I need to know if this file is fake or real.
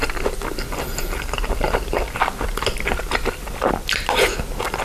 real